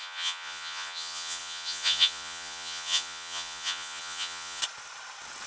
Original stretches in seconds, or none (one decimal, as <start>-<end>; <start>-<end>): 4.6-5.5